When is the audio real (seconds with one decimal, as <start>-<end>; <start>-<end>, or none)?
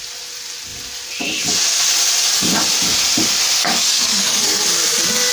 0.0-3.6; 4.6-5.3